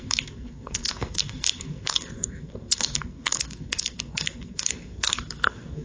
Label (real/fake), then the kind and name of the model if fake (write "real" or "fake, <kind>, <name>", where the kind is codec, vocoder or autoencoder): fake, codec, SNAC